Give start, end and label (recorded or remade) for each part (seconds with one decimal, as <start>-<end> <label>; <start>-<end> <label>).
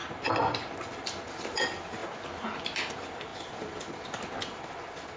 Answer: 0.0-5.2 recorded